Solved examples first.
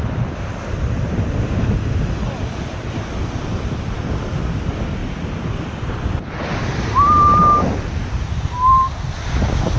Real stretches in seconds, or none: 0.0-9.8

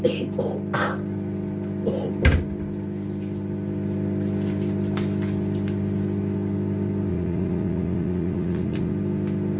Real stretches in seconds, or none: 0.0-7.1; 8.9-9.6

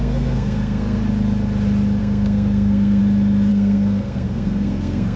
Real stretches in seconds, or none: 1.0-2.0; 3.0-3.5

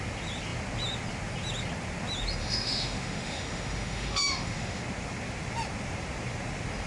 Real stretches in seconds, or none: 0.0-2.4; 4.8-6.9